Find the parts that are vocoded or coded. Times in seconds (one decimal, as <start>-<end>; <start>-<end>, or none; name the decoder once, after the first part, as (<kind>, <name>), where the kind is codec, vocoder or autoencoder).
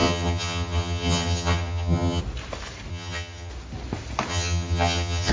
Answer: 0.0-2.2 (vocoder, HiFi-GAN); 2.9-3.5; 4.3-5.3